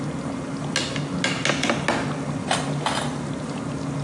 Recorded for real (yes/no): yes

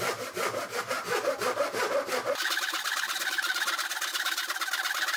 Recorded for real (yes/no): yes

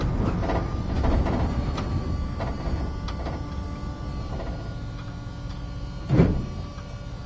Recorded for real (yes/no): yes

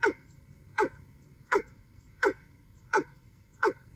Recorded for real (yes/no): no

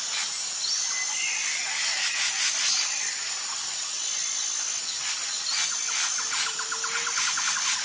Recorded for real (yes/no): yes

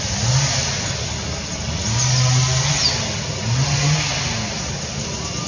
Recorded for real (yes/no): yes